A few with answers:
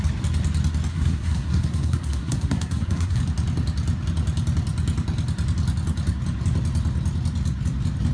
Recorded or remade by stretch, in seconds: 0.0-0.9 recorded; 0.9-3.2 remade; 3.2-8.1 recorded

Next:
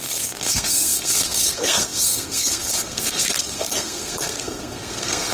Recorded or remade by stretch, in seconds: 0.0-5.3 remade

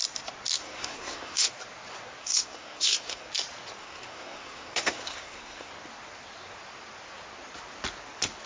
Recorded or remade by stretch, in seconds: 0.0-0.6 recorded; 0.6-1.5 remade; 1.5-2.2 recorded; 2.2-3.3 remade; 3.3-3.8 recorded; 3.8-5.7 remade; 5.7-8.5 recorded

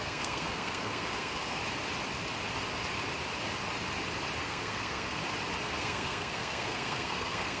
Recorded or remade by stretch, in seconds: 0.0-1.6 remade; 1.6-4.4 recorded; 4.4-5.2 remade; 5.2-5.8 recorded; 5.8-7.6 remade

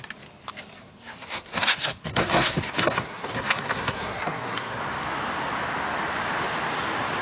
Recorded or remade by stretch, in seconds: 0.0-0.8 recorded; 0.8-4.8 remade; 4.8-7.2 recorded

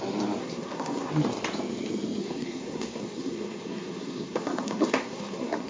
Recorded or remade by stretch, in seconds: 0.0-0.4 recorded; 0.4-1.1 remade; 1.1-2.2 recorded; 2.2-5.7 remade